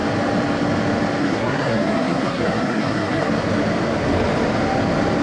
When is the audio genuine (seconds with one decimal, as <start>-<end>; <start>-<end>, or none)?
0.0-1.2; 3.3-5.2